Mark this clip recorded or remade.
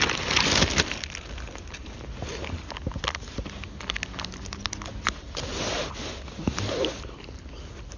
recorded